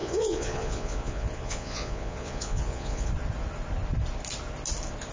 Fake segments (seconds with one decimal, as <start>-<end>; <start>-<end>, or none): 0.0-3.1